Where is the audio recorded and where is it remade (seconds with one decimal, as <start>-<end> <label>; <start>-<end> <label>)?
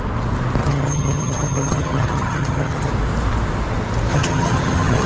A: 0.0-0.6 recorded; 0.6-2.9 remade; 2.9-4.1 recorded; 4.1-5.1 remade